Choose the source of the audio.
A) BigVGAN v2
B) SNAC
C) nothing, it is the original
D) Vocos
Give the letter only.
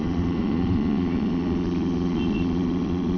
D